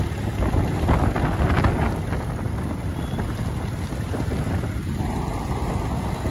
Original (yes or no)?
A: yes